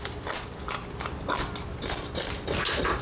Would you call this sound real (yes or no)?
yes